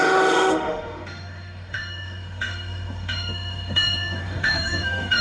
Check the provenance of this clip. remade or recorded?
remade